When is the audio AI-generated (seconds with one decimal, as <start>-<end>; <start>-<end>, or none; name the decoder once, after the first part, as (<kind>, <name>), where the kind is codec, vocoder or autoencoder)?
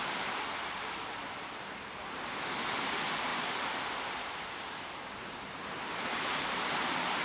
none